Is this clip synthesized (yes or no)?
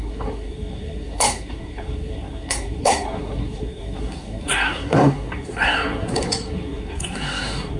yes